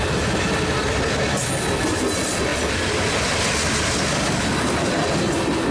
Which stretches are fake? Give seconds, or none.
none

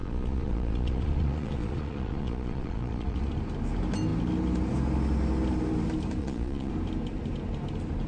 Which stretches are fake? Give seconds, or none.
0.0-3.3 (vocoder, Vocos); 6.2-6.7

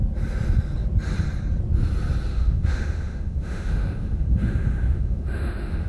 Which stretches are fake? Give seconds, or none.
2.3-5.9 (autoencoder, DAC-VAE)

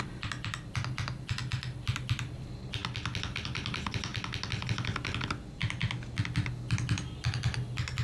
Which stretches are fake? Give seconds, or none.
0.0-2.8 (vocoder, BigVGAN v2); 3.4-4.1; 6.2-8.0